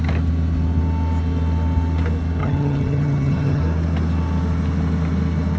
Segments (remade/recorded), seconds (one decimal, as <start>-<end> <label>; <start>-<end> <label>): 0.0-2.4 recorded; 2.4-3.6 remade; 3.6-5.6 recorded